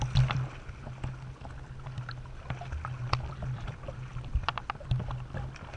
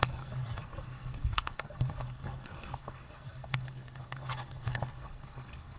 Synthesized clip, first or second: second